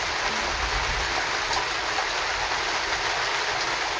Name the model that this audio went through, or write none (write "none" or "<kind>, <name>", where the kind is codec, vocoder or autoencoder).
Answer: none